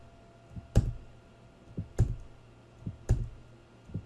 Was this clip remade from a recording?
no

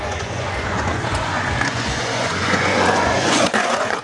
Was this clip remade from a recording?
yes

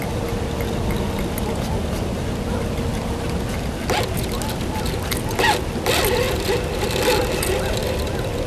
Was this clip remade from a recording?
no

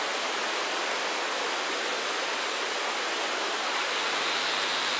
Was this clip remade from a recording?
no